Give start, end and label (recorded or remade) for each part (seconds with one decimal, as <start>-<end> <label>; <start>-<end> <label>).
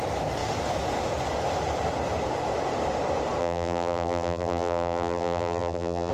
0.0-3.4 recorded; 3.4-6.1 remade